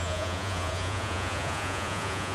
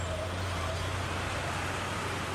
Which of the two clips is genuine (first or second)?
second